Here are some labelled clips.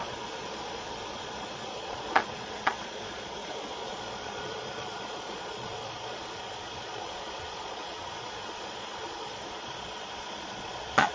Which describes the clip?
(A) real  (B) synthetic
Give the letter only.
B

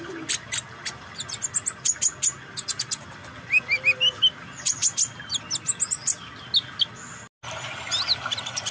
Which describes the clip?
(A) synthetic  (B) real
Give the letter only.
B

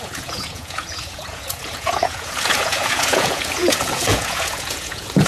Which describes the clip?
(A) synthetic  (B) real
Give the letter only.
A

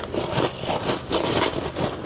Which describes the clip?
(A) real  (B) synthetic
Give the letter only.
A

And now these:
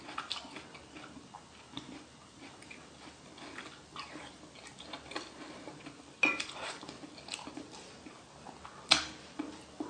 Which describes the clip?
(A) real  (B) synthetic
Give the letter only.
A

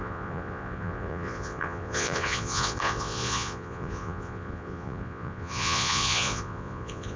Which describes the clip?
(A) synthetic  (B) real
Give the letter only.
A